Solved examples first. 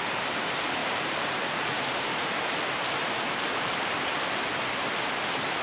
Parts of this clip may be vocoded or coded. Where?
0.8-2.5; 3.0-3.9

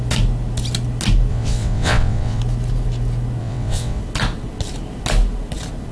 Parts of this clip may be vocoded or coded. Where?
1.3-2.4; 3.4-4.0